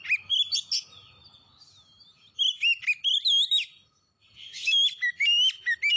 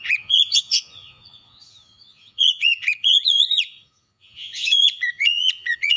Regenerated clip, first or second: second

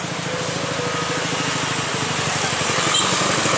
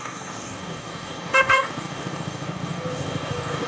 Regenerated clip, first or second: second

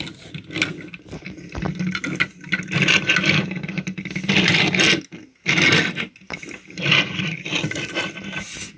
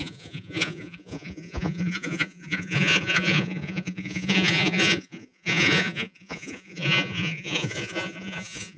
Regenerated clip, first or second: second